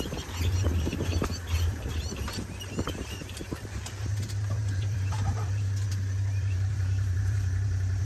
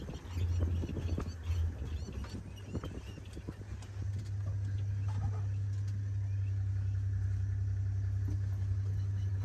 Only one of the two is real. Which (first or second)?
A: second